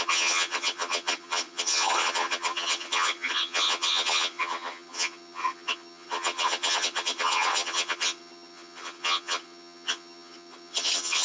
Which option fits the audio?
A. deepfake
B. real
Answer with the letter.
A